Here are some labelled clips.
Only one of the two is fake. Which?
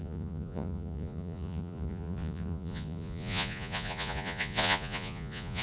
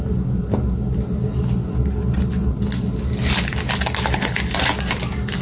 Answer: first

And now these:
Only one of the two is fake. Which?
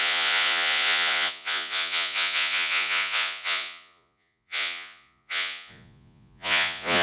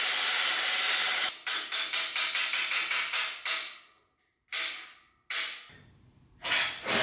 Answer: first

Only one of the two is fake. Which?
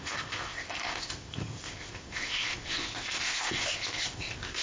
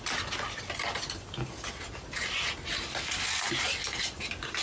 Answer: first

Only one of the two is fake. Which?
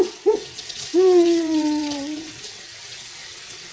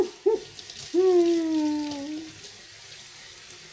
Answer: first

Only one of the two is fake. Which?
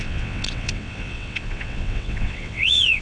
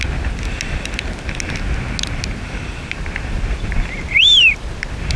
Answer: first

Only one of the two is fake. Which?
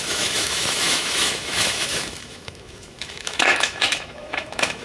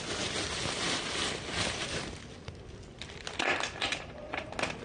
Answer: first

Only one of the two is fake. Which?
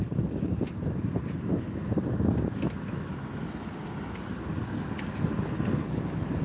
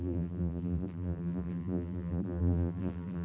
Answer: second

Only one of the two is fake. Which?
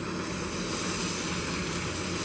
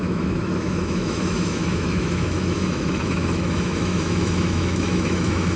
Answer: second